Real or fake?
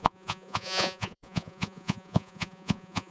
fake